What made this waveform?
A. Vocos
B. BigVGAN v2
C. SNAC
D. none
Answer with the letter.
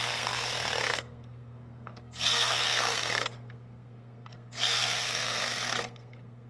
C